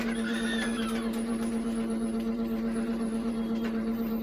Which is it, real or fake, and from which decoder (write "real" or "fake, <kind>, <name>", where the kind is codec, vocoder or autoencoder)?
fake, vocoder, BigVGAN v2